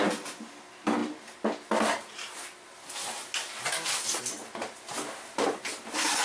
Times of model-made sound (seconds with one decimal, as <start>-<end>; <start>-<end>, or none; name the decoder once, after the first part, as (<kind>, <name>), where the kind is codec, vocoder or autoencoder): none

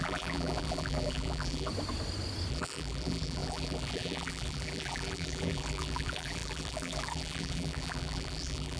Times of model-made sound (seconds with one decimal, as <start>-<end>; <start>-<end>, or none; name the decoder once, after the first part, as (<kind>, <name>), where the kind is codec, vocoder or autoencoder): 0.0-1.7 (vocoder, BigVGAN v2); 2.5-8.8

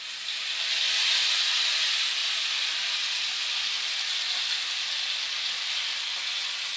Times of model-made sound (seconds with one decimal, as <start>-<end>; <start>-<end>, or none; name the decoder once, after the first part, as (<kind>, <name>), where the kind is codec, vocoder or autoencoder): none